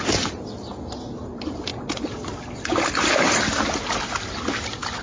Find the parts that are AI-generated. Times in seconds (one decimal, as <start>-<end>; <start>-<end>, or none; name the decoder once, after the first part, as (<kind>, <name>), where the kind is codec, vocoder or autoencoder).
none